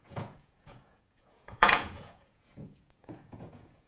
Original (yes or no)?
no